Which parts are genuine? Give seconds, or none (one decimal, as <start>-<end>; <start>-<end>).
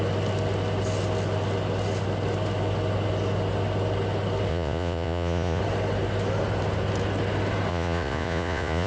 0.0-4.5; 5.6-7.7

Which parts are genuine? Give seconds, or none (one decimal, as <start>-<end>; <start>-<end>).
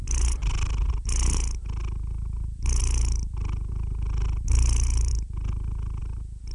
0.0-6.5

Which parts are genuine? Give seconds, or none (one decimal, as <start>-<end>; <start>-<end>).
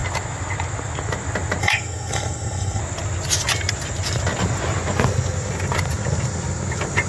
0.0-1.6; 2.8-7.1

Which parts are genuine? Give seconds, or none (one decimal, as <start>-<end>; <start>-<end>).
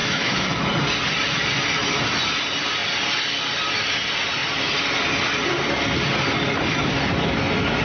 0.7-7.8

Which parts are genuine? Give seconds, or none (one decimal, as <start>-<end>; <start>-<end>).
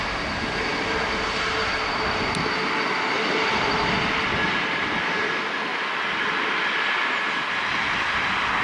0.0-8.6